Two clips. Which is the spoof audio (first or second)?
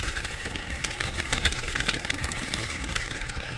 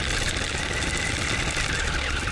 first